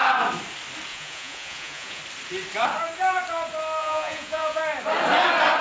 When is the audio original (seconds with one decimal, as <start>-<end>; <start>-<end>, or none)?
0.0-0.9; 2.0-3.8; 4.6-5.6